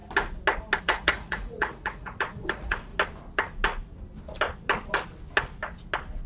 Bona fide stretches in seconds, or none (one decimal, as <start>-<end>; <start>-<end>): 0.0-0.8; 2.9-6.3